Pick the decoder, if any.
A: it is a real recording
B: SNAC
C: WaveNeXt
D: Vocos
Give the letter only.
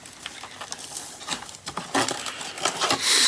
A